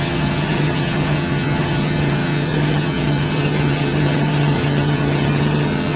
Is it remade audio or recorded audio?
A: remade